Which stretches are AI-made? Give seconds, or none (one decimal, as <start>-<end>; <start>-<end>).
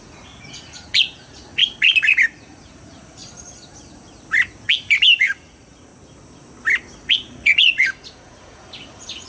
0.0-1.6; 2.3-3.2; 5.2-5.9; 7.0-9.3